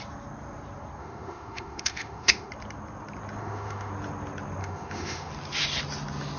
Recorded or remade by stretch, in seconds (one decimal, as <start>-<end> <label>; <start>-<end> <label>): 0.0-1.0 recorded; 1.0-2.5 remade; 2.5-3.4 recorded; 3.4-3.9 remade; 3.9-4.6 recorded; 4.6-5.3 remade; 5.3-6.4 recorded